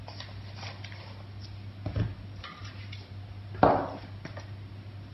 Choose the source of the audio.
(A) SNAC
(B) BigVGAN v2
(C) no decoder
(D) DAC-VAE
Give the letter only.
C